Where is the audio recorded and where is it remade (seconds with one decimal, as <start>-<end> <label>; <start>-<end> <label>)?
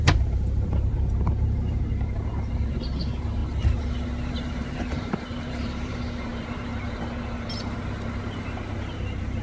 0.0-3.4 remade; 3.4-4.3 recorded; 4.3-9.4 remade